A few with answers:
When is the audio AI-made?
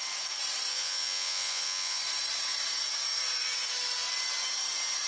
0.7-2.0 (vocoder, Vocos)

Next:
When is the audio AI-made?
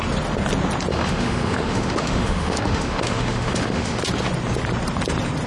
0.9-4.0 (autoencoder, DAC-VAE)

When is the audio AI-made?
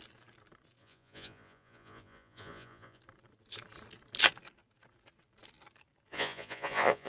0.8-3.0 (vocoder, Vocos); 6.1-7.1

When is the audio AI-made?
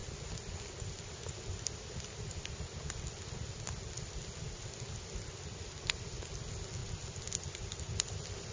none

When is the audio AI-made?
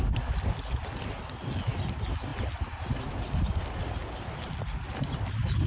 none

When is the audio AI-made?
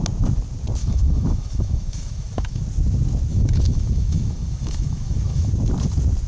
0.8-2.6 (autoencoder, DAC-VAE); 3.3-5.5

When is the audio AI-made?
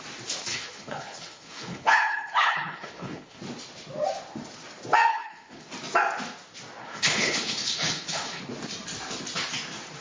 0.5-3.4 (codec, HILCodec); 5.1-5.7; 6.8-8.4